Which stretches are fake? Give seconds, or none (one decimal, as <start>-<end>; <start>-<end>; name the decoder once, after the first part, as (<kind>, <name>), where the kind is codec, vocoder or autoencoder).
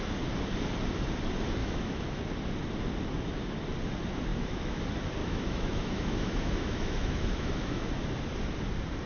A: 1.6-2.2 (autoencoder, DAC-VAE); 4.3-4.8; 5.2-7.9